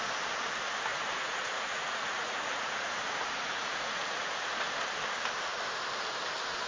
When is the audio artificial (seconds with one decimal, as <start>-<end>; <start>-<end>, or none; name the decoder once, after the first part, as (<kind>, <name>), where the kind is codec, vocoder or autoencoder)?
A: 0.9-4.7 (vocoder, Vocos)